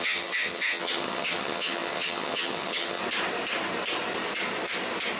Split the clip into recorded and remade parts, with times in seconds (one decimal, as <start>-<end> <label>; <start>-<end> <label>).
0.0-3.0 remade; 3.0-5.2 recorded